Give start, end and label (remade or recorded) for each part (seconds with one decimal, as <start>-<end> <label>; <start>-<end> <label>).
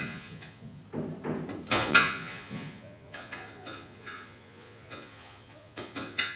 0.0-0.8 remade; 0.8-1.7 recorded; 1.7-6.4 remade